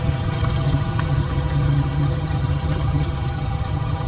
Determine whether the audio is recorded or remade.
remade